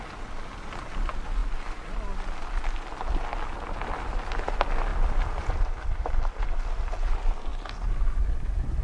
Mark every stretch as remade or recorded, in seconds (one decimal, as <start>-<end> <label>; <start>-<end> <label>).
0.0-8.8 recorded